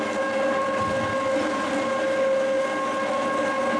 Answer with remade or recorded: recorded